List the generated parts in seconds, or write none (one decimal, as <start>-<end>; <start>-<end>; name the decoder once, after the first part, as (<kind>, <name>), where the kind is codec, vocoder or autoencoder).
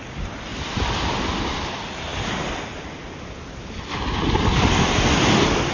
none